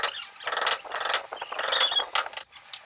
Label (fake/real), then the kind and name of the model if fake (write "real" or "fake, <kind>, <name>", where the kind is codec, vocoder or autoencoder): real